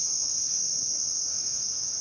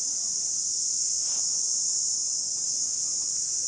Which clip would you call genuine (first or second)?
second